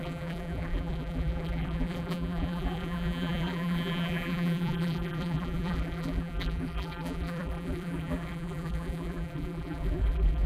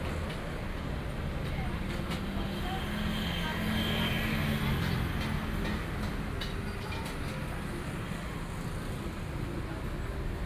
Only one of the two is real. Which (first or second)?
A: second